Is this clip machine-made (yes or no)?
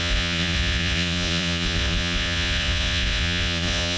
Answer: yes